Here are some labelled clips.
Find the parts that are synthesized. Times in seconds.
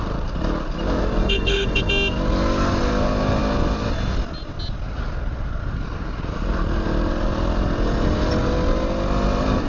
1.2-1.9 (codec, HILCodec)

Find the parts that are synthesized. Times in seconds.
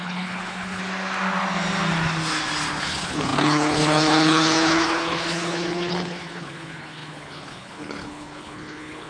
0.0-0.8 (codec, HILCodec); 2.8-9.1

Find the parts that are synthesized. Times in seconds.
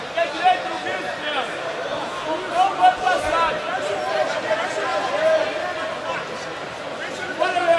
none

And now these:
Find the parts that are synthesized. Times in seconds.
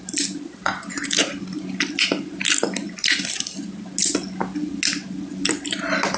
none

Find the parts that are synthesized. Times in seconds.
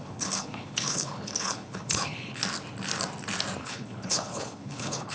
0.0-2.4 (codec, HILCodec); 3.6-5.1